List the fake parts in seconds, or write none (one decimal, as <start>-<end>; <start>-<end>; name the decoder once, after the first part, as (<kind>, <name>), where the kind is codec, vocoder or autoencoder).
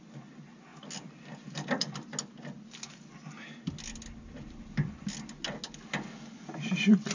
none